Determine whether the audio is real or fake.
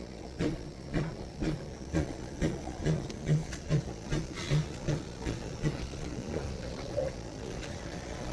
fake